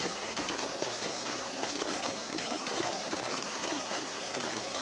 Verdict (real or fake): fake